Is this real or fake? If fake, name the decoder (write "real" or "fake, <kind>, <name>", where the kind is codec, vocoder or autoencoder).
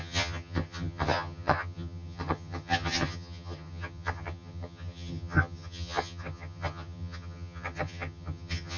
fake, vocoder, HiFi-GAN